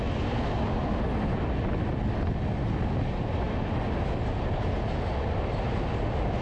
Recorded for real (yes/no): yes